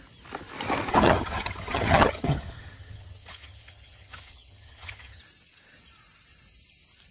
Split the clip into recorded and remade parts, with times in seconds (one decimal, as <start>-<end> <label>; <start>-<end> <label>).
0.0-0.9 recorded; 0.9-5.2 remade; 5.2-7.1 recorded